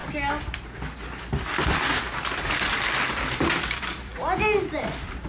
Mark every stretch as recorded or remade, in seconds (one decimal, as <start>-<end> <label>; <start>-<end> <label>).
0.0-3.1 recorded; 3.1-4.1 remade; 4.1-4.7 recorded; 4.7-5.3 remade